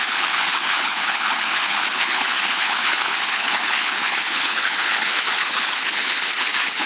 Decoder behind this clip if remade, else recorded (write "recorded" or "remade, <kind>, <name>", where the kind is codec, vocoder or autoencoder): remade, codec, HILCodec